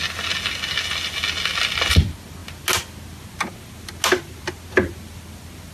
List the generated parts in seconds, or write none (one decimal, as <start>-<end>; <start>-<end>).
none